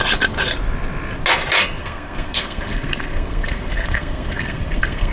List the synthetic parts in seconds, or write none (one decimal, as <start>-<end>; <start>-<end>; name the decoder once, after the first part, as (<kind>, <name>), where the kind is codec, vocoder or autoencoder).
1.8-5.1 (codec, SNAC)